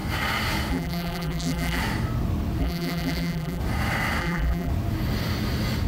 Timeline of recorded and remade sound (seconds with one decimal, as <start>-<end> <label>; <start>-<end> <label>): 0.0-0.7 recorded; 0.7-1.8 remade; 1.8-2.6 recorded; 2.6-3.6 remade; 3.6-4.2 recorded; 4.2-4.7 remade; 4.7-5.9 recorded